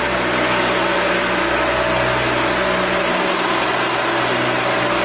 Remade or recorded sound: recorded